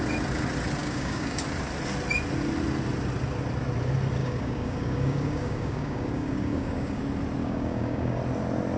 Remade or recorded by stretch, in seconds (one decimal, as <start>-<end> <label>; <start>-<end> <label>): 0.0-0.8 recorded; 0.8-1.4 remade; 1.4-4.2 recorded; 4.2-7.0 remade; 7.0-7.4 recorded; 7.4-8.2 remade; 8.2-8.8 recorded